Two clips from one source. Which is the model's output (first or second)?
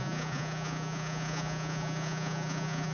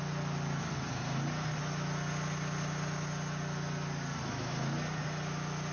first